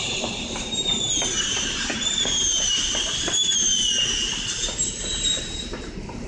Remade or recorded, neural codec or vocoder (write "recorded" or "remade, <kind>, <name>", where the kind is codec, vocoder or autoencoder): remade, vocoder, BigVGAN v2